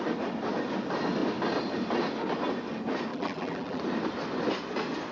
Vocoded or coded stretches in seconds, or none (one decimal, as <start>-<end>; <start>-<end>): 3.1-3.8